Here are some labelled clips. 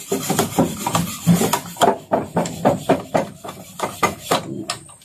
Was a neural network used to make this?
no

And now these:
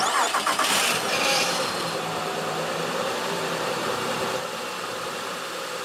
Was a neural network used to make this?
yes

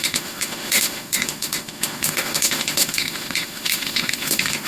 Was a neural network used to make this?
yes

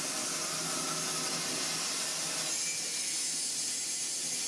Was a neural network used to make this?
no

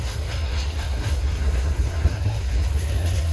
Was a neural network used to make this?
yes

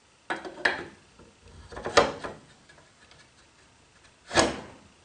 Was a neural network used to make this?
no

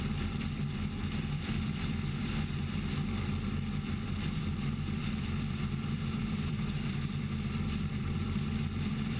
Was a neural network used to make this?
yes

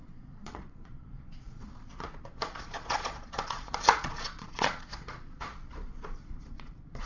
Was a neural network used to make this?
yes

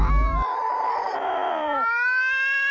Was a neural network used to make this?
yes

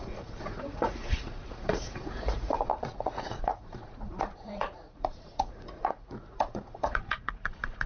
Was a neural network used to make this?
yes